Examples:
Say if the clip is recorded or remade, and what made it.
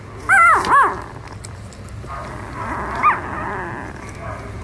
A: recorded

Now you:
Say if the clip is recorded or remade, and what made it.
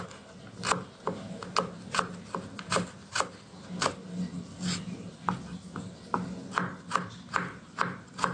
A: recorded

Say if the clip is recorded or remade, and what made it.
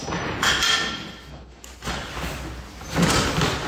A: recorded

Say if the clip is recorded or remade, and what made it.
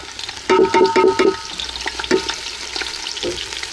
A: recorded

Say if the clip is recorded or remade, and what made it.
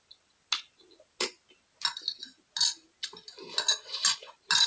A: recorded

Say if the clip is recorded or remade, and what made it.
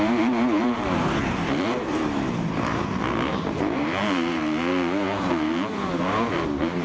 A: remade, vocoder, BigVGAN v2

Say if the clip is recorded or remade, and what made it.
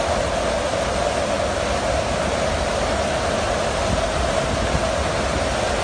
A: recorded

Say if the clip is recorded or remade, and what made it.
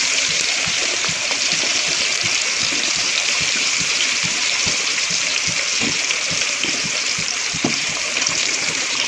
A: remade, vocoder, BigVGAN v2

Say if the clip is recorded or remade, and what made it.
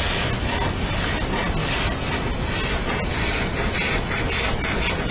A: recorded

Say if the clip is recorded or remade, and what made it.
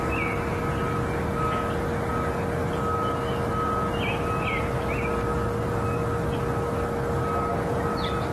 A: recorded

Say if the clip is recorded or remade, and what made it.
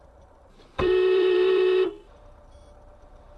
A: remade, vocoder, BigVGAN v2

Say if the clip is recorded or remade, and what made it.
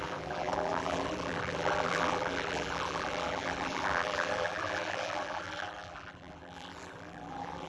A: remade, vocoder, BigVGAN v2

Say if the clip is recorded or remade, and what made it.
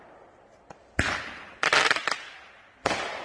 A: recorded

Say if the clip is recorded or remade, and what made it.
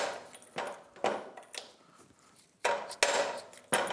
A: recorded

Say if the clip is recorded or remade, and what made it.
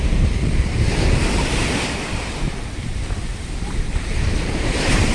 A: remade, vocoder, BigVGAN v2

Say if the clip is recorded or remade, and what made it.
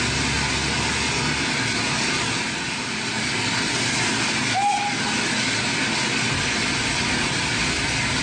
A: recorded